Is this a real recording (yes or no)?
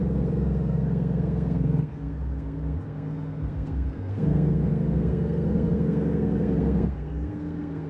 no